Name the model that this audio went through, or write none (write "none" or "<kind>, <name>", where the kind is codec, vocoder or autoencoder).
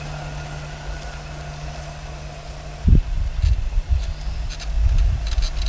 none